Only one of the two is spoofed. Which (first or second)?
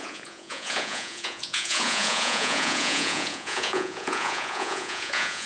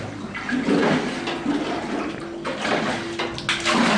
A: first